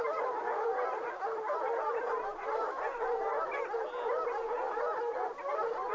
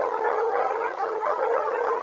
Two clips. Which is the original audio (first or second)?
first